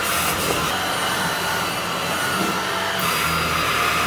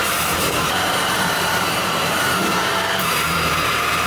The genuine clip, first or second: first